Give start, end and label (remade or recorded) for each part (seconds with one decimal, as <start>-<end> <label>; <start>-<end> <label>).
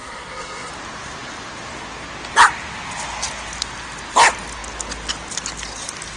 0.0-0.7 remade; 0.7-6.2 recorded